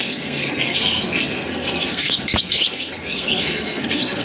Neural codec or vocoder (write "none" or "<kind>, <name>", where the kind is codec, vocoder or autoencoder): codec, SNAC